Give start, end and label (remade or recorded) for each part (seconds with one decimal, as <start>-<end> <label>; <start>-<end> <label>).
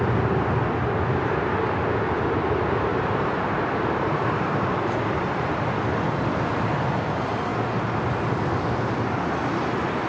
0.0-2.9 recorded; 2.9-4.7 remade; 4.7-10.1 recorded